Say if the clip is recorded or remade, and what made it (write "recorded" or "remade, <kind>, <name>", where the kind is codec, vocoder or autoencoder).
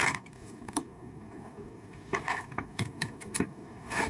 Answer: remade, codec, DAC